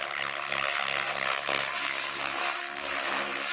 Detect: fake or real real